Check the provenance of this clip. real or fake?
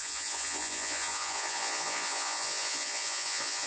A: fake